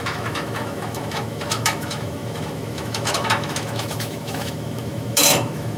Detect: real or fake fake